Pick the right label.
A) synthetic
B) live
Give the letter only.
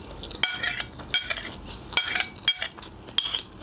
B